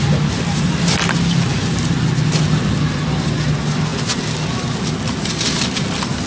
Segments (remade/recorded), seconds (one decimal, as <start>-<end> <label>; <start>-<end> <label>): 0.0-6.3 recorded